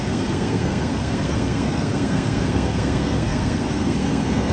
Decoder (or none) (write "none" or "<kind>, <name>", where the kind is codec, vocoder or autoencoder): codec, SNAC